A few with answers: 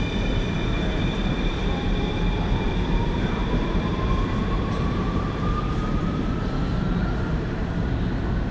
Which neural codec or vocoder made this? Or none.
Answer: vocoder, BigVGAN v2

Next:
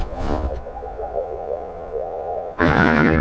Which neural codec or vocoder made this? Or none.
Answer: vocoder, Vocos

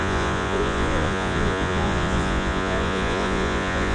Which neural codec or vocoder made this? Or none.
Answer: vocoder, Vocos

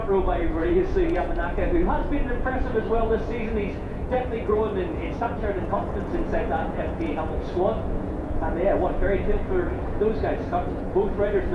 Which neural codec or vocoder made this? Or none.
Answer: vocoder, Vocos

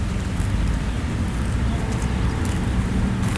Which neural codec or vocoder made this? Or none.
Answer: none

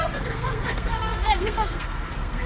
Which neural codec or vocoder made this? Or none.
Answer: codec, SNAC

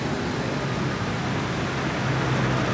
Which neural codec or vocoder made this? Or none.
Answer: none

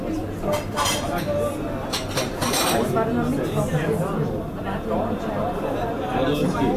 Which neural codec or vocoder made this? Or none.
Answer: none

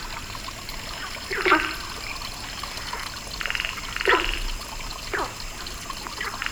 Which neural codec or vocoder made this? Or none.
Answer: none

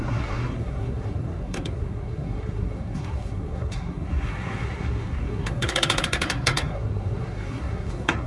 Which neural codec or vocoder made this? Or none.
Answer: codec, SNAC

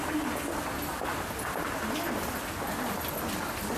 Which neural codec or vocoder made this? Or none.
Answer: none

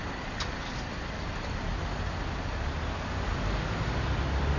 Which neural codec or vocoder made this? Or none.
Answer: none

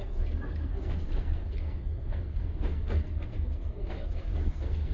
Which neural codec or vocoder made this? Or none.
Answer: codec, SNAC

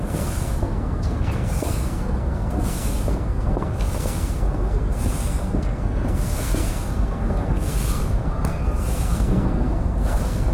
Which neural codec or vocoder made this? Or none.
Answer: codec, SNAC